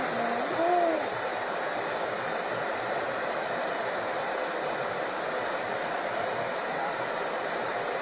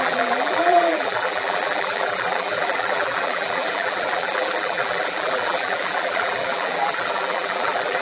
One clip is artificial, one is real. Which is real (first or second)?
first